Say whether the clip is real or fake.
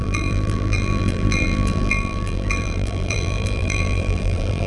fake